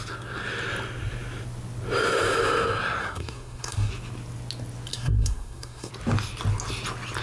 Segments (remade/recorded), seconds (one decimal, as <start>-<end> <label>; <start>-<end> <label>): 0.0-3.0 recorded; 3.0-3.9 remade; 3.9-4.9 recorded; 4.9-5.9 remade; 5.9-7.2 recorded